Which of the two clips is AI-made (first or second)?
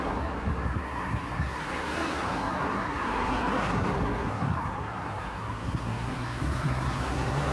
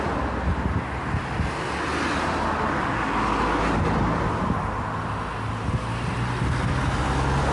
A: first